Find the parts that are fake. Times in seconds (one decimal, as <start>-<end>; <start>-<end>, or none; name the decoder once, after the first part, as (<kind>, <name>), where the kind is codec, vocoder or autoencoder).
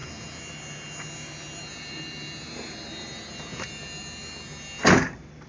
none